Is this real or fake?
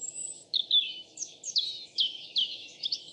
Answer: fake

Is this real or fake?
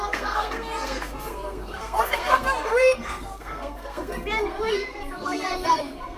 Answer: fake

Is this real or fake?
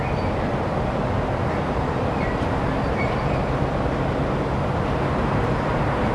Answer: real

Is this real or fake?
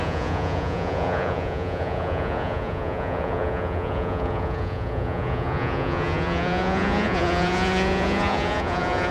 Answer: fake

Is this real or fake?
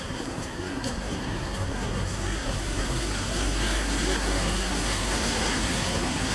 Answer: fake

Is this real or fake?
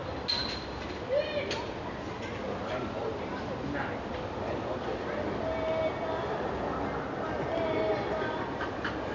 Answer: real